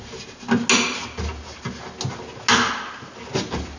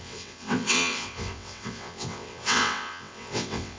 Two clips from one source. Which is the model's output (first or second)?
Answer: second